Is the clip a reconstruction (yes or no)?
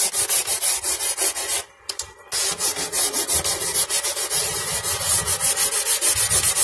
no